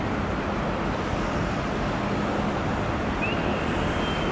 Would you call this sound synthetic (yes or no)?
no